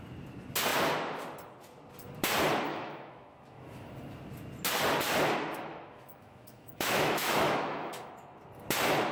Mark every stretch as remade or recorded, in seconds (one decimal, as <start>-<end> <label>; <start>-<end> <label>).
0.0-2.7 recorded; 2.7-3.9 remade; 3.9-5.7 recorded; 5.7-8.4 remade; 8.4-9.1 recorded